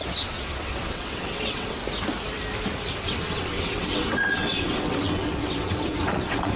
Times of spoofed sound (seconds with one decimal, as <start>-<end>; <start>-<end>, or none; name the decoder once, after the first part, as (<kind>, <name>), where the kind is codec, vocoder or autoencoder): 0.0-1.8 (vocoder, WaveNeXt); 3.0-6.6